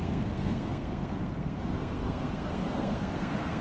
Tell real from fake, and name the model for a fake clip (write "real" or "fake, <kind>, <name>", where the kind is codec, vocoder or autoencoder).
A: fake, codec, SNAC